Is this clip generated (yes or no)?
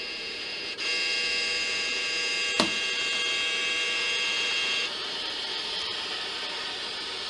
yes